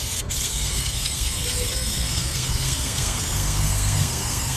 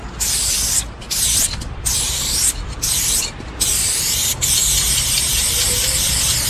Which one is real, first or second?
second